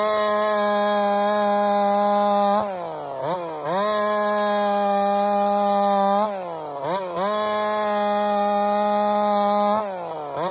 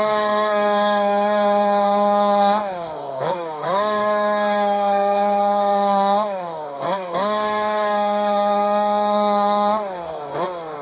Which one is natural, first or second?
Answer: first